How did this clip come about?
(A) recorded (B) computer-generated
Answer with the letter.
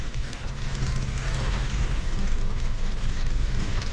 B